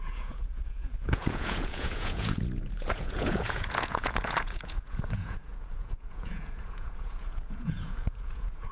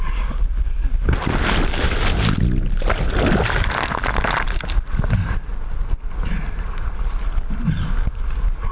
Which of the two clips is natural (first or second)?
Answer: second